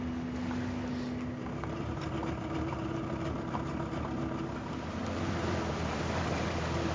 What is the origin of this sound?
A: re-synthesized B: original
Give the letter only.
B